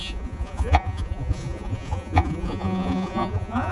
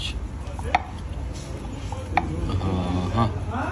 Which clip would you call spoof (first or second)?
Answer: first